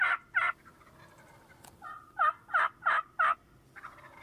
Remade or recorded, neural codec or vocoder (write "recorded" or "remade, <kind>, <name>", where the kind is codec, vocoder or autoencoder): remade, vocoder, BigVGAN v2